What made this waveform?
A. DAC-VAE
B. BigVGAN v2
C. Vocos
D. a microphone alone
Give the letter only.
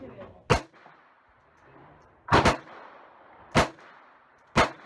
D